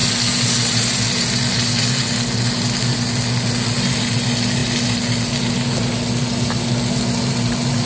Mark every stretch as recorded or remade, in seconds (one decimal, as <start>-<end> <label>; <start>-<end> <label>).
0.0-7.9 recorded